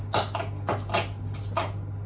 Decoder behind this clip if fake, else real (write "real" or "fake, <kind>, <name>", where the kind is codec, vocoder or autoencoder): real